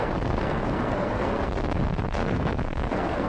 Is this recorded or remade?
remade